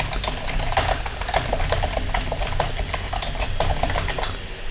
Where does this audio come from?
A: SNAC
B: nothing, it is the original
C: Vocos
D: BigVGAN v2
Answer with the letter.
B